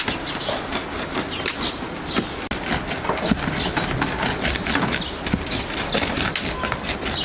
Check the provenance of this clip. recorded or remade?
recorded